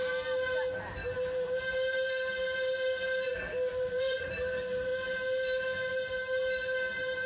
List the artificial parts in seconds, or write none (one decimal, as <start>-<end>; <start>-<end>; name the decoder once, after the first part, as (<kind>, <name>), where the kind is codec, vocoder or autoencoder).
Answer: 1.0-1.6 (vocoder, BigVGAN v2); 3.7-4.3; 4.9-5.9